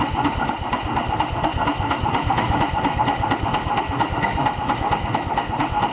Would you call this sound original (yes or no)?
no